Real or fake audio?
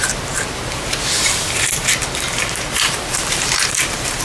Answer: fake